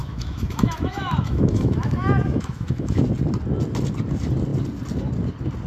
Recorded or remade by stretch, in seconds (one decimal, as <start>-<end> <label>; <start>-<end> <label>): 0.0-3.0 remade; 3.0-5.7 recorded